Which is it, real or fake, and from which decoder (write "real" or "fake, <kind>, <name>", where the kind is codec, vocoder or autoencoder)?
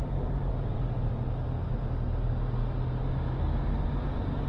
real